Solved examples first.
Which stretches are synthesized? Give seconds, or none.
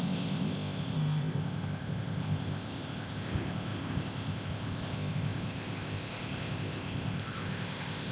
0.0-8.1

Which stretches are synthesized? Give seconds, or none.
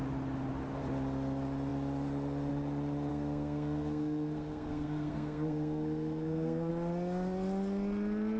3.1-6.7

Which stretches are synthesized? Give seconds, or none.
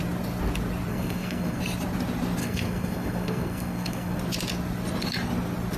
0.9-1.6; 2.4-4.2